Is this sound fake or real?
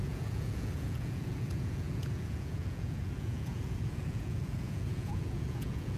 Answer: fake